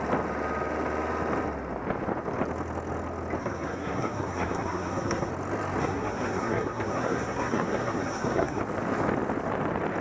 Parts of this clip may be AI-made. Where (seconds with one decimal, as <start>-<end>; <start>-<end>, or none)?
3.4-5.3; 5.8-8.6